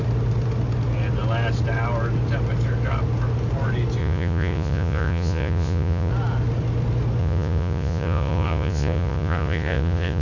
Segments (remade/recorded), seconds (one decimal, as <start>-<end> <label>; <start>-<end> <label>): 0.0-4.0 recorded; 4.0-6.1 remade; 6.1-7.2 recorded; 7.2-10.2 remade